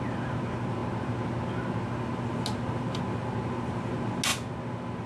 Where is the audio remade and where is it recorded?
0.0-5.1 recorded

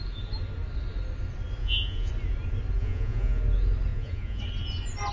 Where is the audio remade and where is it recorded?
0.0-1.6 recorded; 1.6-2.1 remade; 2.1-2.8 recorded; 2.8-3.4 remade; 3.4-3.9 recorded; 3.9-4.4 remade; 4.4-5.1 recorded

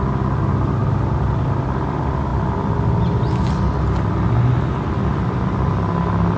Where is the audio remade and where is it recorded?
0.0-6.4 recorded

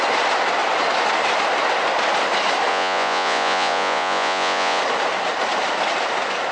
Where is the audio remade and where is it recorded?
0.0-2.7 recorded; 2.7-4.8 remade; 4.8-6.5 recorded

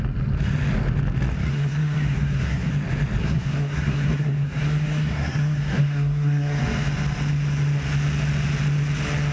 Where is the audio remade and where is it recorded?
0.0-1.4 recorded; 1.4-2.7 remade; 2.7-3.2 recorded; 3.2-6.6 remade; 6.6-9.3 recorded